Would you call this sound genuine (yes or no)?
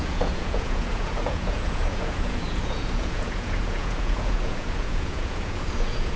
no